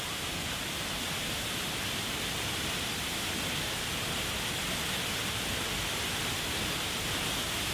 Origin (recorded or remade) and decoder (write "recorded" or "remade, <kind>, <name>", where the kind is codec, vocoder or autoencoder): recorded